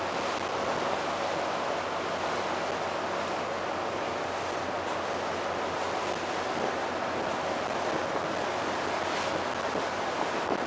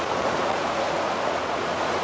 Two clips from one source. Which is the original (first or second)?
first